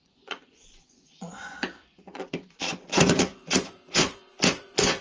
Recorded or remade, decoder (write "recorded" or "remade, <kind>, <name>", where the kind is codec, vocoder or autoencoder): remade, vocoder, Vocos